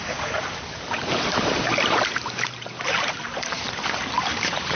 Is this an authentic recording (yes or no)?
no